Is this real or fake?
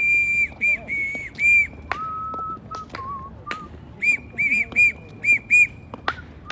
real